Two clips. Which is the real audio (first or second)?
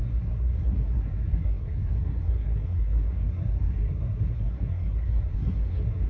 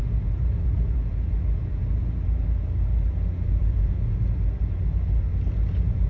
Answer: second